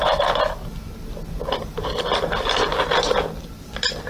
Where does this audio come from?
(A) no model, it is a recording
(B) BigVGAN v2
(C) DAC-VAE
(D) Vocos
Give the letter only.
A